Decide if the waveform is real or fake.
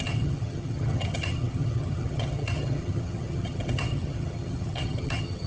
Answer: fake